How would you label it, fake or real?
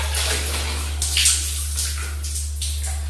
real